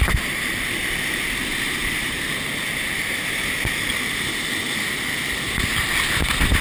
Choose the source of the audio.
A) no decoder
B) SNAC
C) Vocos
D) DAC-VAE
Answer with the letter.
A